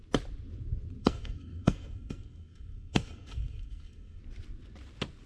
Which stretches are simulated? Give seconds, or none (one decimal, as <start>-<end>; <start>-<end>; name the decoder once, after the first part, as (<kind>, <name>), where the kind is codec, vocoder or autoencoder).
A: 1.0-4.2 (codec, SNAC)